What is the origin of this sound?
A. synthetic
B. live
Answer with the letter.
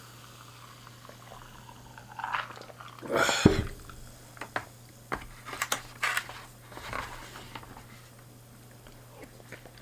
B